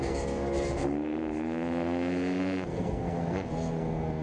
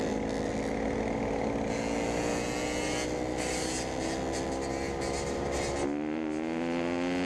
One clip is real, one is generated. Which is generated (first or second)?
first